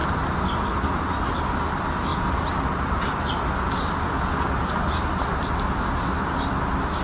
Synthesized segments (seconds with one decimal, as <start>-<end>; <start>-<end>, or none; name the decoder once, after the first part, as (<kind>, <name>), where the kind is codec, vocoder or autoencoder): none